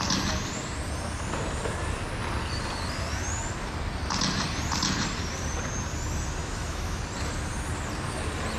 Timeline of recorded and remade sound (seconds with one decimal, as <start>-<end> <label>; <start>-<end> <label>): 0.0-6.4 recorded; 6.4-7.0 remade; 7.0-8.6 recorded